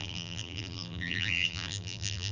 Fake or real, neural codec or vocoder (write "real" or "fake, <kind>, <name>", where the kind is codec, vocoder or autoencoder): fake, vocoder, BigVGAN v2